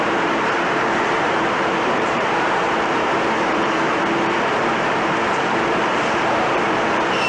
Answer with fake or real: fake